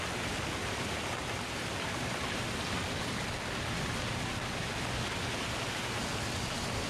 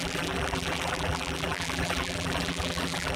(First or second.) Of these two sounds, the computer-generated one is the second